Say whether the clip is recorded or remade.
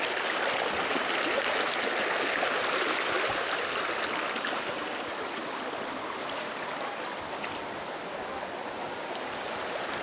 recorded